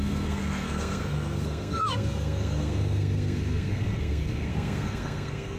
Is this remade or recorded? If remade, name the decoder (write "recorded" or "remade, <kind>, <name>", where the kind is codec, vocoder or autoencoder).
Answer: remade, codec, SNAC